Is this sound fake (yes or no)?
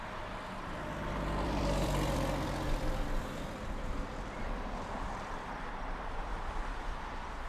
yes